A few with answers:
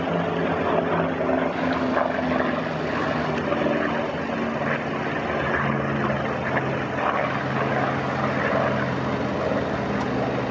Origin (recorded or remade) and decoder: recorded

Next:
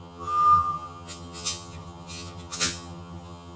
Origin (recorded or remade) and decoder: remade, vocoder, HiFi-GAN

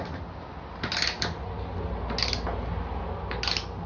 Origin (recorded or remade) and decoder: recorded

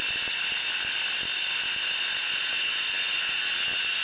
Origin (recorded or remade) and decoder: recorded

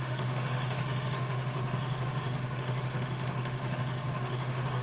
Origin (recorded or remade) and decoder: remade, autoencoder, DAC-VAE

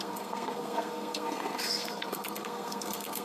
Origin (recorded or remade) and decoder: remade, codec, SNAC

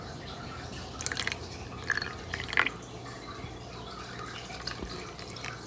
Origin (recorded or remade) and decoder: recorded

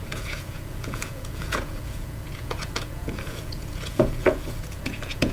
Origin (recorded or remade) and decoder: remade, vocoder, Vocos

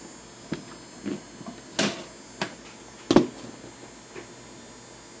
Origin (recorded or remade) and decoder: recorded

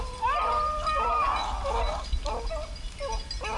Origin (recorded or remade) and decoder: recorded